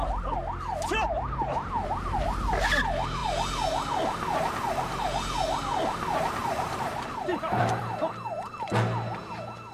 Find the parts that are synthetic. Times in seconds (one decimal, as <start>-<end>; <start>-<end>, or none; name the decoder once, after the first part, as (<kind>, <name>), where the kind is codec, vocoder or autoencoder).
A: 6.4-8.7 (vocoder, BigVGAN v2)